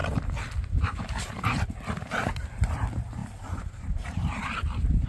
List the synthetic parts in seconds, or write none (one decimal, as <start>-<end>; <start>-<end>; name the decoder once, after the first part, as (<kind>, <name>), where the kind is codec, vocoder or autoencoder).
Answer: 0.9-3.2 (vocoder, BigVGAN v2); 3.7-5.1